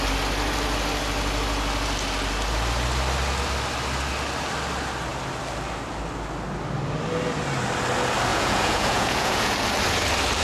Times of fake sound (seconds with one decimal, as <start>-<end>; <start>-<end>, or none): 8.3-9.5